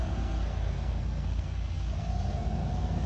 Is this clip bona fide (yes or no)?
no